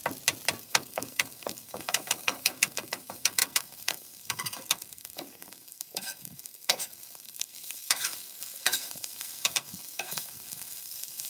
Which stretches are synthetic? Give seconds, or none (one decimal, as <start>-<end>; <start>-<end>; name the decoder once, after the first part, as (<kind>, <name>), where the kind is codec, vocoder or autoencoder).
0.6-11.3 (codec, SNAC)